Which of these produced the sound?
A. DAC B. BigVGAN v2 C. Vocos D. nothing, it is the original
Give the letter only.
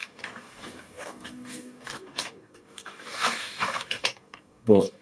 A